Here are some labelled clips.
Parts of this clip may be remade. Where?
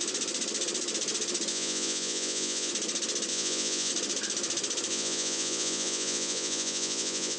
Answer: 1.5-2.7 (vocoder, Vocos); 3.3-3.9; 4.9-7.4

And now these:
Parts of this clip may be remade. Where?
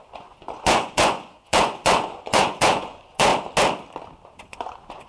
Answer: 0.0-3.3 (vocoder, Vocos); 4.4-5.1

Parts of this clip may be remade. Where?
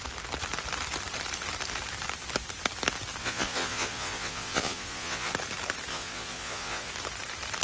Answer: 3.2-5.3 (vocoder, Vocos); 5.9-6.9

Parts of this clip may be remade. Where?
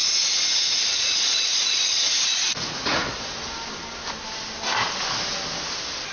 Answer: 0.0-3.2 (vocoder, Vocos)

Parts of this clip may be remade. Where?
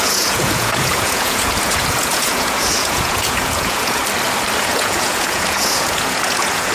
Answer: 0.0-4.0 (vocoder, Vocos); 4.6-6.7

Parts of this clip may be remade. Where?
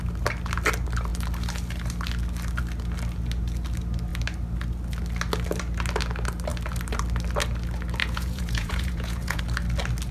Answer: 8.0-9.4 (vocoder, Vocos)